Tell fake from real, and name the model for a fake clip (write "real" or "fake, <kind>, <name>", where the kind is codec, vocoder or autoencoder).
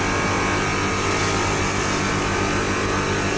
real